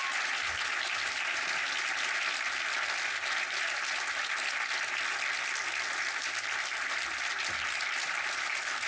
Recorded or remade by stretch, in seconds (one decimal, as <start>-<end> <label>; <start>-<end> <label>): 0.0-8.9 recorded